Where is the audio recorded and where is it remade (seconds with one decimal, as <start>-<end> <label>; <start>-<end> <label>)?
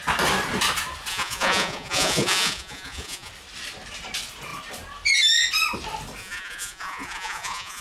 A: 0.0-1.1 recorded; 1.1-3.3 remade; 3.3-6.2 recorded; 6.2-7.8 remade